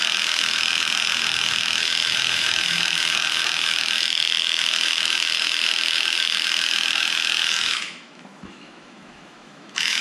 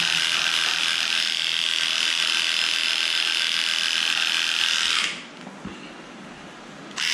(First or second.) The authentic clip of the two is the second